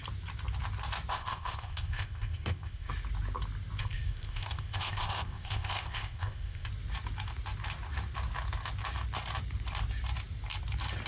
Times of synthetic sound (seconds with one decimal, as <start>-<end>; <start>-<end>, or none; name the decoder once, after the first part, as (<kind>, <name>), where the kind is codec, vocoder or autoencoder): 1.1-2.9 (codec, ZipCodec); 3.8-6.7